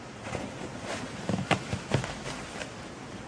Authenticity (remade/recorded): recorded